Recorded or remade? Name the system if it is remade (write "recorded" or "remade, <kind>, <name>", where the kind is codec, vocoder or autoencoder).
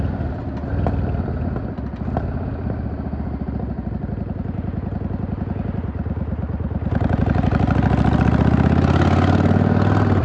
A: recorded